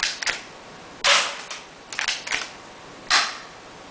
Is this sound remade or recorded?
recorded